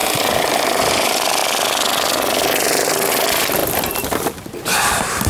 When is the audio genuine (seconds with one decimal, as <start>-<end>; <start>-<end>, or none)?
0.0-0.8; 1.4-3.1